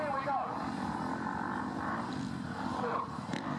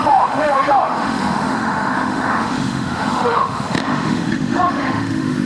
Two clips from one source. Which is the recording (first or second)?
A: first